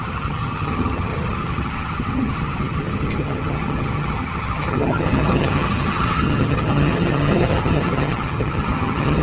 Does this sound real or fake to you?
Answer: fake